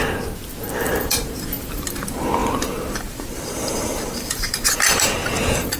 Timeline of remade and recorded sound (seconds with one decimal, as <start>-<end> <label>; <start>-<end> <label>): 0.0-0.8 recorded; 0.8-5.8 remade